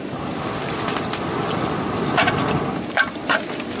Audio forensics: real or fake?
real